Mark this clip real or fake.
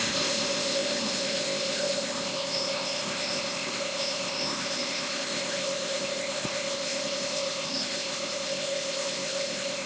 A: fake